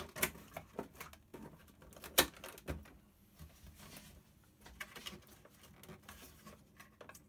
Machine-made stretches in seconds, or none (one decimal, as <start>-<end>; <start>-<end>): none